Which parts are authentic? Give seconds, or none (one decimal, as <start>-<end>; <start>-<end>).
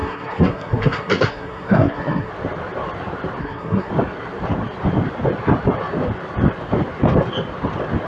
2.3-3.4; 3.9-8.1